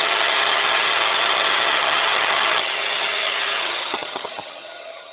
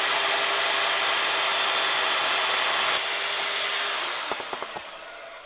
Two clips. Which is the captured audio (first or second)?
second